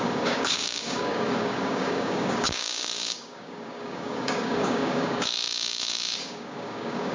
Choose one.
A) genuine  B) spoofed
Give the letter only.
B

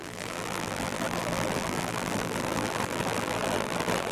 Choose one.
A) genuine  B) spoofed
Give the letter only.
B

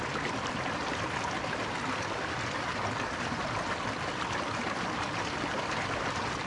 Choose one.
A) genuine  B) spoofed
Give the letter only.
A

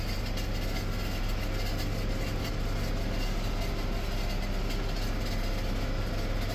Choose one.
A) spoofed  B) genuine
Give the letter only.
B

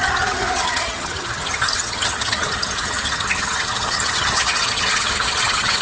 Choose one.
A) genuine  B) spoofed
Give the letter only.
B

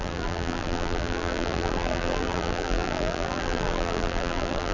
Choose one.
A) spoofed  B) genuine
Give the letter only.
A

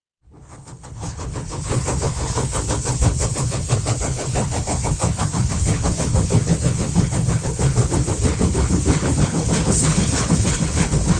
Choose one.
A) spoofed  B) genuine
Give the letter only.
A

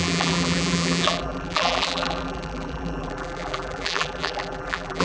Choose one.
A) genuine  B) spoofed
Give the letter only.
B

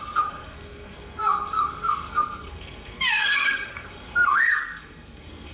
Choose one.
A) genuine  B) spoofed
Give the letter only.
B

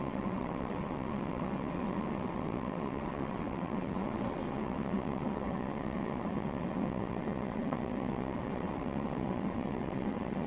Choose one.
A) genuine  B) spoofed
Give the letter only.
B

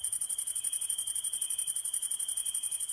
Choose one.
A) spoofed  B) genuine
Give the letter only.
B